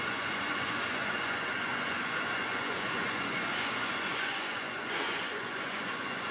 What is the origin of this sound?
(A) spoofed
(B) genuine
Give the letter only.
A